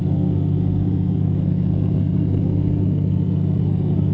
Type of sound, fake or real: fake